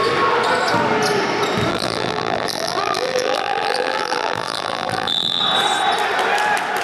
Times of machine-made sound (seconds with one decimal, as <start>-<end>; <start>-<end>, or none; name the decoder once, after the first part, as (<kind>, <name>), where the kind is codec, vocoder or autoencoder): 1.7-5.4 (vocoder, BigVGAN v2)